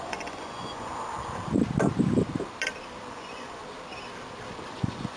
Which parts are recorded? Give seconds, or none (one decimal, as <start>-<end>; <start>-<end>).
0.9-3.1; 3.6-4.7